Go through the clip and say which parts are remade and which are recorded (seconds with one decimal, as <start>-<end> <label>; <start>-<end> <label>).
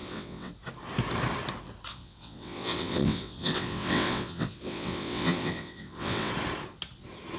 0.0-0.5 remade; 0.5-1.9 recorded; 1.9-6.3 remade; 6.3-7.4 recorded